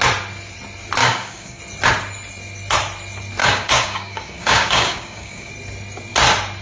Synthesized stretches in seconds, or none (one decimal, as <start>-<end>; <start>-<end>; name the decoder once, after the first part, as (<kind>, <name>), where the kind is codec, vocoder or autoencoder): 1.0-1.6 (codec, DAC); 3.4-5.5

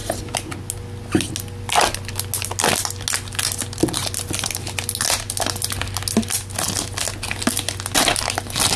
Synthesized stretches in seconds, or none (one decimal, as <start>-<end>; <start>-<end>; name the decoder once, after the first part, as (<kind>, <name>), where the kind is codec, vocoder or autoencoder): none